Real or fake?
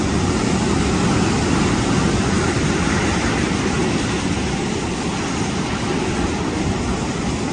real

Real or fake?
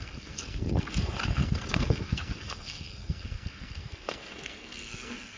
fake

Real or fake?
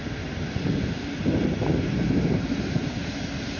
real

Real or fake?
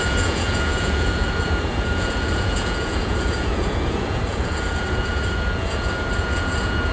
fake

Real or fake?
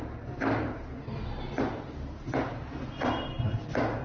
real